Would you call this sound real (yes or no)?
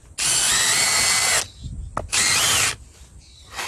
yes